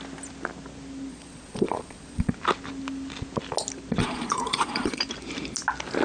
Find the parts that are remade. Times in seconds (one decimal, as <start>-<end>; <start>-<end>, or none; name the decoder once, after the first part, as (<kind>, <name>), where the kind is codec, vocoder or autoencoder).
1.1-2.3 (vocoder, Vocos); 4.0-5.0